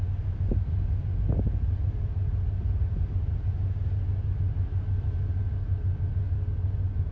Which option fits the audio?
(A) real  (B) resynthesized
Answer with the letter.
A